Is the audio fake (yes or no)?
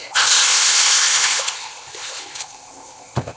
yes